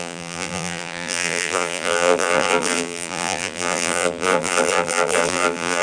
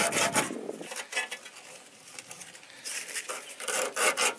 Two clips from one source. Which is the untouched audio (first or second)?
second